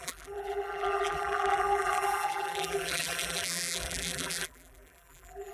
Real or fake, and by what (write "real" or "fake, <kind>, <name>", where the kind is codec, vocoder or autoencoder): fake, vocoder, BigVGAN v2